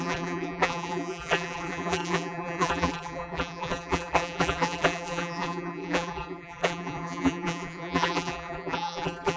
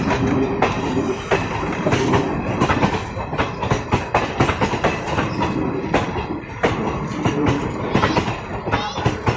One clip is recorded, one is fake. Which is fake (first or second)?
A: first